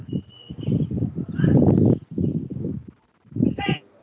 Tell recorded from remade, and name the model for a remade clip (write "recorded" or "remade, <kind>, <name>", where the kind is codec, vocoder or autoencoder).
recorded